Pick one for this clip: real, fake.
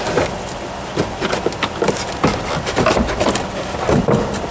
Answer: real